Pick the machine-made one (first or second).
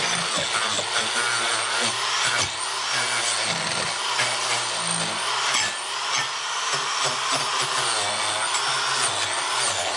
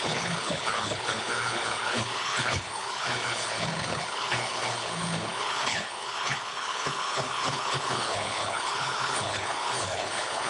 second